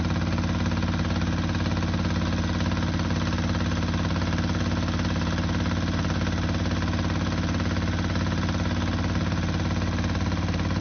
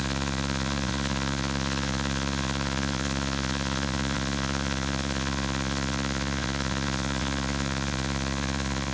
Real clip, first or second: first